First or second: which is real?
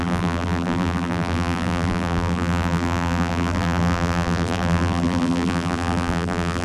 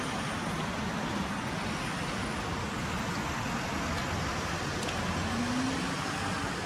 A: second